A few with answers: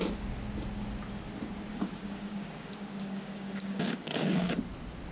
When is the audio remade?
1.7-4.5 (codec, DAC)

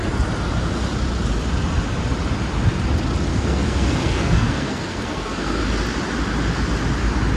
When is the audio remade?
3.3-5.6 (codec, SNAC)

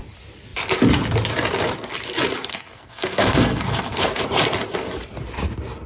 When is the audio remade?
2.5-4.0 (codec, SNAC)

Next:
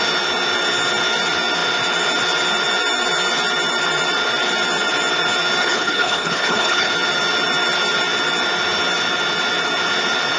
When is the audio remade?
5.6-6.9 (codec, HILCodec)

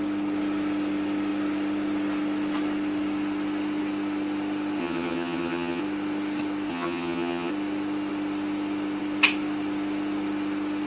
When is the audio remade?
4.8-5.8 (vocoder, HiFi-GAN); 6.7-7.5